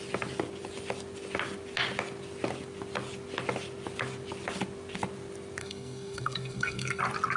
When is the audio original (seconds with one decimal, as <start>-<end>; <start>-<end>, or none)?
0.0-5.6; 7.0-7.4